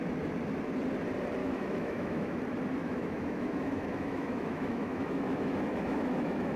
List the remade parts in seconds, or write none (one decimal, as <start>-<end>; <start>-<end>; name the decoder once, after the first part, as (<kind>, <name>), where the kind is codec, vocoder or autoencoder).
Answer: 1.4-2.4 (autoencoder, DAC-VAE); 2.8-6.6